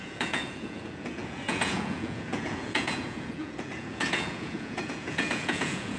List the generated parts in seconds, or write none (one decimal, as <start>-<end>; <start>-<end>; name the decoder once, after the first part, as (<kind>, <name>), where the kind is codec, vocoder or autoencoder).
0.0-6.0 (vocoder, Vocos)